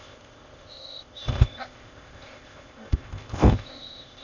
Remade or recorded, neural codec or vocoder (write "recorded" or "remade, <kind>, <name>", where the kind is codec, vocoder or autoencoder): remade, codec, ZipCodec